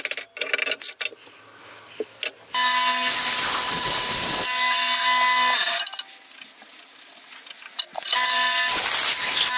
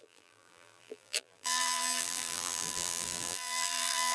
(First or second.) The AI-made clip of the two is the second